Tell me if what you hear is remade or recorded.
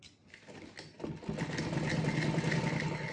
recorded